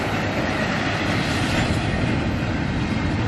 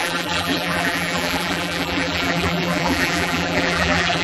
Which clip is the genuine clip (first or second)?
first